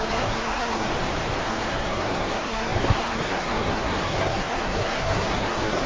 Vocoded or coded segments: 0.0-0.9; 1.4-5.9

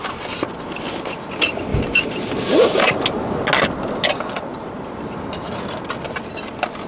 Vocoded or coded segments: 1.7-2.9; 4.5-5.2

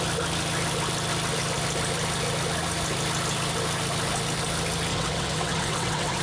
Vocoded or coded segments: 4.9-6.2

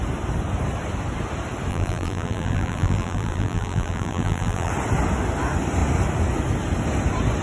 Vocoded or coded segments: 1.7-4.7

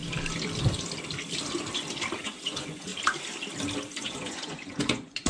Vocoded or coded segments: 2.2-2.9; 4.0-5.3

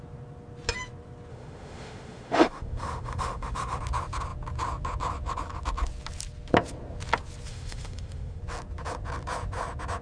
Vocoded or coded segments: 1.3-3.8; 7.5-8.4